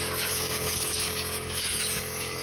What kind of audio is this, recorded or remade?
remade